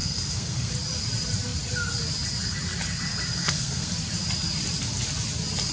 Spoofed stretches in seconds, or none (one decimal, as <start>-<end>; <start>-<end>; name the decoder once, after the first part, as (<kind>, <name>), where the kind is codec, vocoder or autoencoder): 0.0-0.7 (codec, SNAC); 3.4-3.9